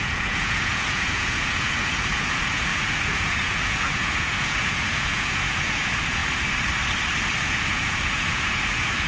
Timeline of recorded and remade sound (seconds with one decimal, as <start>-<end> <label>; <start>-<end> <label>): 0.0-6.2 remade; 6.2-7.4 recorded; 7.4-9.1 remade